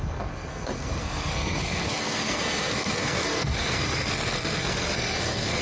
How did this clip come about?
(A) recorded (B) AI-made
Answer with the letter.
B